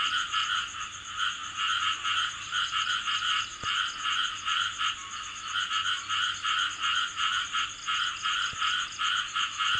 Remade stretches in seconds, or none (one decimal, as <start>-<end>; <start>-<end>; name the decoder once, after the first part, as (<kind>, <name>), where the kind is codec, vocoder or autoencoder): none